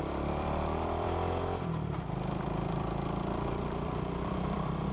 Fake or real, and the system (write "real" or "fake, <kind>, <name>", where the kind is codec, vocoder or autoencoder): fake, vocoder, BigVGAN v2